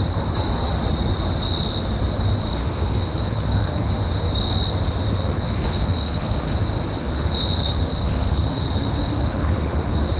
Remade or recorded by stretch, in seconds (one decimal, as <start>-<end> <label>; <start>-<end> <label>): 0.0-2.6 recorded; 2.6-3.9 remade; 3.9-5.1 recorded; 5.1-6.5 remade; 6.5-7.0 recorded; 7.0-10.2 remade